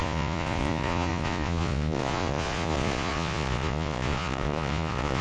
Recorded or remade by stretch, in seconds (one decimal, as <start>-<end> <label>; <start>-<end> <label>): 0.0-5.2 remade

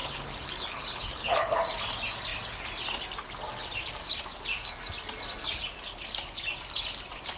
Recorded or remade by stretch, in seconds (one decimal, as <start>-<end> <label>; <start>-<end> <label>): 0.0-1.6 remade; 1.6-7.4 recorded

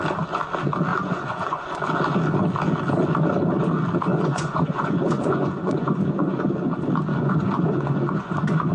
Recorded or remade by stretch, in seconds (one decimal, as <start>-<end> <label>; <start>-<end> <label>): 0.0-0.9 recorded; 0.9-1.8 remade; 1.8-4.1 recorded; 4.1-6.4 remade; 6.4-7.1 recorded; 7.1-8.7 remade

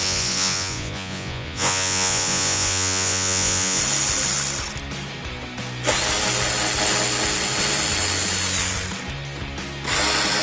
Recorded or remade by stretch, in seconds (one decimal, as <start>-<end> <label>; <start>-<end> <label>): 0.0-3.8 remade; 3.8-10.4 recorded

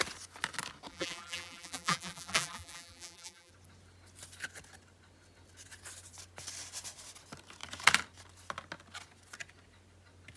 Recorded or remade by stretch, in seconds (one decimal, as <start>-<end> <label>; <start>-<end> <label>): 0.0-0.9 recorded; 0.9-3.5 remade; 3.5-10.4 recorded

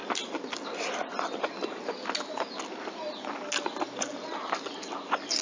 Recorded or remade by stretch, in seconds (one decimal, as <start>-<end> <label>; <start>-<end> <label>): 0.0-5.4 recorded

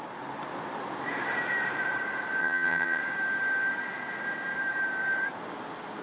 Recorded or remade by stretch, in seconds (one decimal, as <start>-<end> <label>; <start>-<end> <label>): 0.0-2.4 recorded; 2.4-3.0 remade; 3.0-6.0 recorded

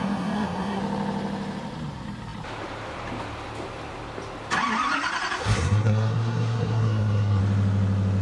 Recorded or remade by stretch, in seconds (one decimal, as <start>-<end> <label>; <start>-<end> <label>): 0.0-0.8 remade; 0.8-5.4 recorded; 5.4-7.4 remade; 7.4-8.2 recorded